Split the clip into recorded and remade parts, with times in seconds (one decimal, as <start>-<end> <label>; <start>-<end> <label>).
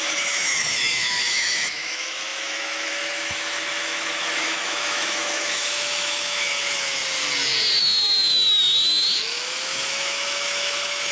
0.0-7.0 remade; 7.0-7.8 recorded; 7.8-11.1 remade